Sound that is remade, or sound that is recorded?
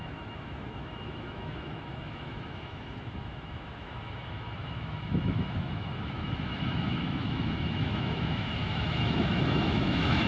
remade